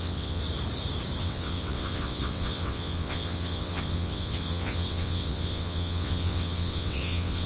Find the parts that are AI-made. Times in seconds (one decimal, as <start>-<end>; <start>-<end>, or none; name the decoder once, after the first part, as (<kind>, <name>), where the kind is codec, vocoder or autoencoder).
0.0-0.4 (vocoder, WaveNeXt); 1.2-7.5